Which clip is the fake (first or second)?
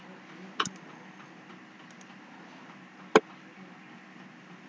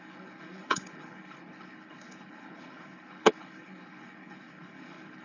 second